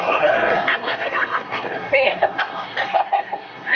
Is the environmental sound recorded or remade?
remade